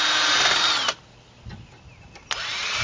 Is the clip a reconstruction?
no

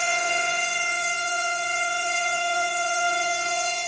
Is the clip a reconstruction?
yes